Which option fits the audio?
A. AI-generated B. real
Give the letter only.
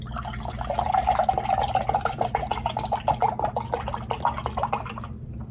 B